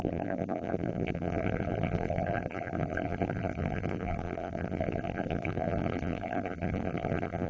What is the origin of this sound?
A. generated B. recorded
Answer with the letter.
A